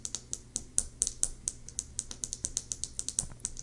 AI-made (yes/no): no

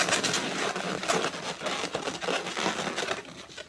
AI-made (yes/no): no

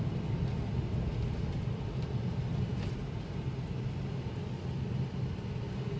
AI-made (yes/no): no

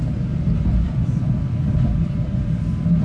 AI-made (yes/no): yes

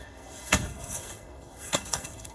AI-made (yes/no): yes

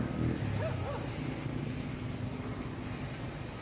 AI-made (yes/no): no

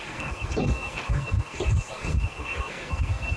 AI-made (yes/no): yes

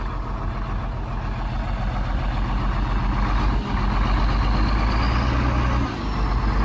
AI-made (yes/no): no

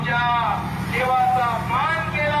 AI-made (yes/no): no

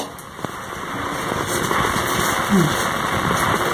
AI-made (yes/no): no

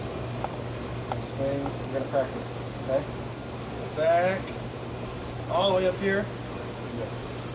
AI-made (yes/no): no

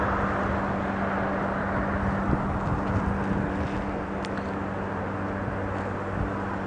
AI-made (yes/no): no